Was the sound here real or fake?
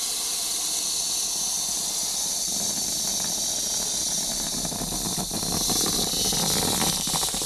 real